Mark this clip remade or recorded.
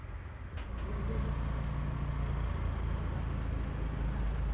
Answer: recorded